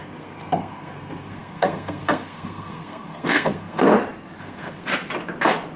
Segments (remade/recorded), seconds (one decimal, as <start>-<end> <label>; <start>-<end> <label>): 0.0-3.9 remade; 3.9-4.4 recorded; 4.4-4.9 remade; 4.9-5.8 recorded